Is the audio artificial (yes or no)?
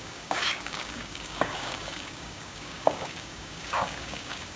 yes